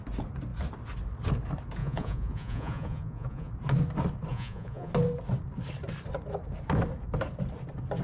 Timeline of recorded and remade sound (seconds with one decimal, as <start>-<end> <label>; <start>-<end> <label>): 0.0-1.8 recorded; 1.8-3.5 remade; 3.5-4.3 recorded; 4.3-4.9 remade; 4.9-8.0 recorded